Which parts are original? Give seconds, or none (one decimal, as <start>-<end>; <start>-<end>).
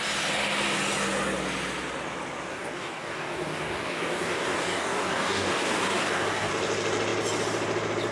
0.0-2.5; 6.5-8.1